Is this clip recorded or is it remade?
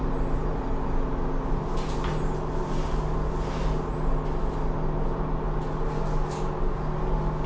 recorded